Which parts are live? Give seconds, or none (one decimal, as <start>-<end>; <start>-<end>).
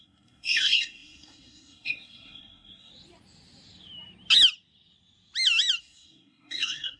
2.9-5.8